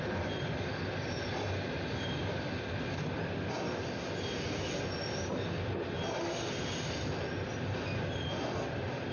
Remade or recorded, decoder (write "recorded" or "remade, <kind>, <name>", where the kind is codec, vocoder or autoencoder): recorded